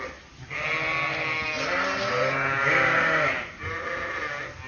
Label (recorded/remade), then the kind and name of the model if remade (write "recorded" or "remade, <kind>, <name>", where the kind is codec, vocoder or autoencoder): recorded